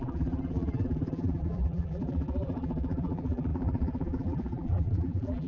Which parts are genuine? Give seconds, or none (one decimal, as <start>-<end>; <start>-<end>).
none